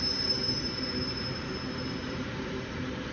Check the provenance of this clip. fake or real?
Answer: fake